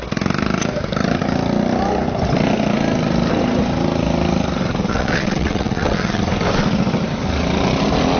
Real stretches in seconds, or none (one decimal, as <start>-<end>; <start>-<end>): 0.0-4.9; 6.2-8.2